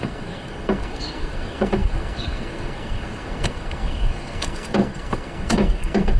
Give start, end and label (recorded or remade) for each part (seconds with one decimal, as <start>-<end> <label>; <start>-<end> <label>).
0.0-6.2 remade